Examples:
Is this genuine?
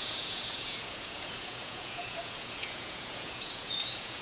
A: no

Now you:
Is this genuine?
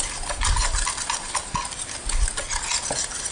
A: yes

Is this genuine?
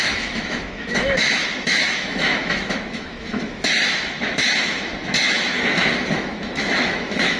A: no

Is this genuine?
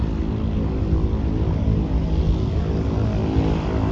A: yes